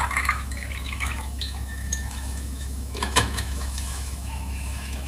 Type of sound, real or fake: fake